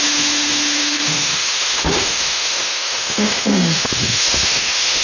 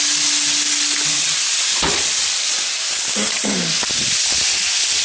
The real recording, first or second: second